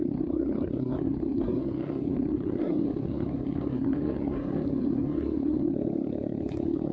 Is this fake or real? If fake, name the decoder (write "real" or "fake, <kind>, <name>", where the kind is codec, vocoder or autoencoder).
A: fake, codec, SNAC